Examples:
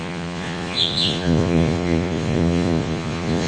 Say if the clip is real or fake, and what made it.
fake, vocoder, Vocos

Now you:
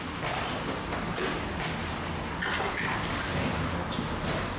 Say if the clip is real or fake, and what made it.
real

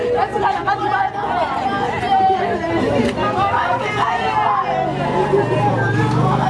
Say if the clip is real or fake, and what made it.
real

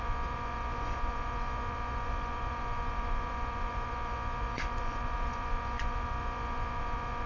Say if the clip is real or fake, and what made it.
fake, vocoder, Vocos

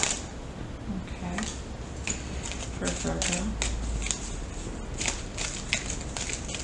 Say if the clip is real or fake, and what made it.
real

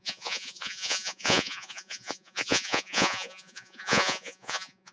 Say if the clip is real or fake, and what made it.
fake, vocoder, Vocos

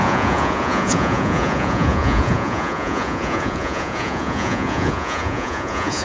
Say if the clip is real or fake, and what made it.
fake, vocoder, Vocos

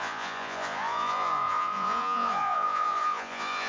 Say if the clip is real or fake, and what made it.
fake, vocoder, Vocos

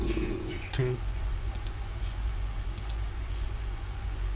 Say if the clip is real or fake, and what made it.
fake, vocoder, Vocos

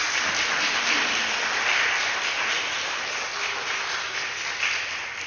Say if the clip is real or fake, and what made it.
real